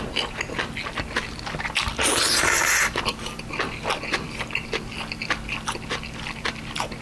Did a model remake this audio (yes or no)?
no